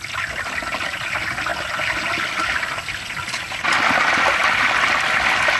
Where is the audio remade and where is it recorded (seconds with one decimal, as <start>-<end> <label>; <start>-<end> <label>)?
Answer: 0.0-1.5 remade; 1.5-2.1 recorded; 2.1-4.4 remade; 4.4-5.6 recorded